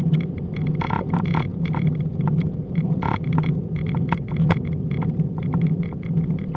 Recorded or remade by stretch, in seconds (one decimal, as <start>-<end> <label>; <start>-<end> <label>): 0.0-6.6 remade